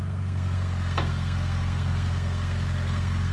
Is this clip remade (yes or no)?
yes